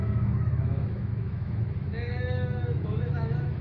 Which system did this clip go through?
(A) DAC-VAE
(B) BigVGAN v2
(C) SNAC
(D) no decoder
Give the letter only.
A